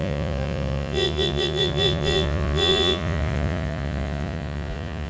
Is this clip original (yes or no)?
no